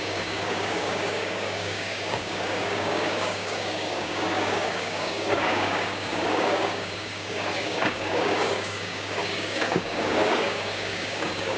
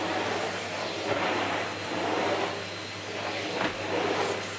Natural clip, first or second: second